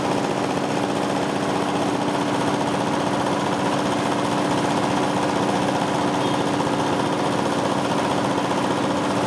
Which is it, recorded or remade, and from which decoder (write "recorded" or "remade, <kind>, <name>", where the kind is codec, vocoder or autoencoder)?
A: recorded